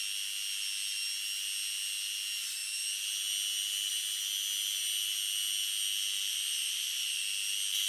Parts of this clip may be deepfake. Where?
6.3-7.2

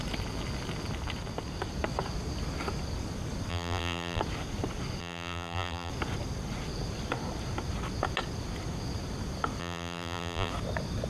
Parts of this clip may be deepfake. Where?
3.5-4.2; 5.0-5.9; 9.6-10.5

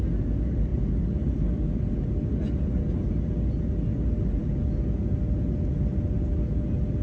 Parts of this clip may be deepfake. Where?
0.7-2.6

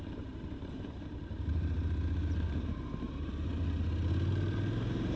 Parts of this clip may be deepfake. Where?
0.0-3.5; 4.3-5.2